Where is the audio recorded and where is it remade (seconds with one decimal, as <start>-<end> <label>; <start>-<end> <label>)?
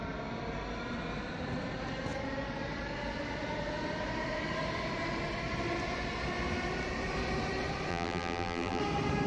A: 0.0-7.9 recorded; 7.9-8.8 remade; 8.8-9.3 recorded